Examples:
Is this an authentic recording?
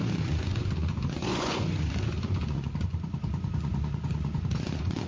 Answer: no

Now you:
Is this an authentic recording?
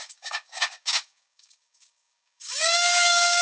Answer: no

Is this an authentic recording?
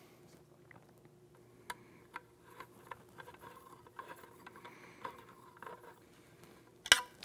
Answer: yes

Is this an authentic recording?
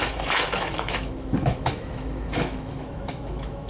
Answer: no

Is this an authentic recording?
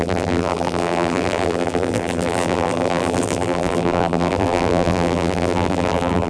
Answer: no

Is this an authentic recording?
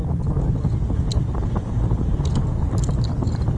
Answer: yes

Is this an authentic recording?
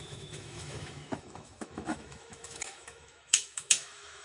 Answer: no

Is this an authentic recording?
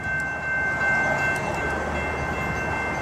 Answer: yes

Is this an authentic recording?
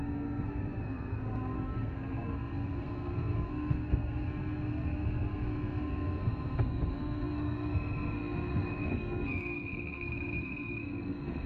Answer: no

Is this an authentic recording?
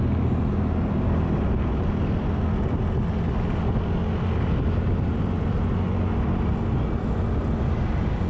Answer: yes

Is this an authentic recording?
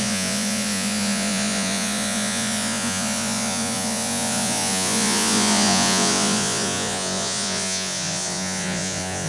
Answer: no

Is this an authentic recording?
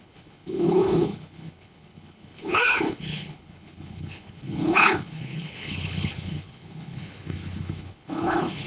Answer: no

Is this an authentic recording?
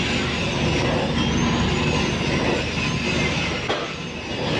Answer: yes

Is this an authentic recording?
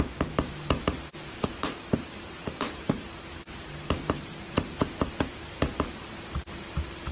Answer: no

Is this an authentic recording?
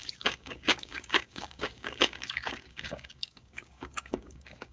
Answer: no